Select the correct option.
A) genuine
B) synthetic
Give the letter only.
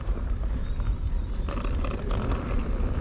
A